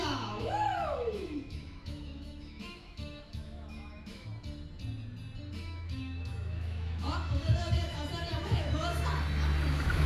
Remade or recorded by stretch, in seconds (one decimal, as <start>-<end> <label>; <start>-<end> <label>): 0.0-4.3 remade; 4.3-5.6 recorded; 5.6-8.9 remade; 8.9-9.7 recorded; 9.7-10.1 remade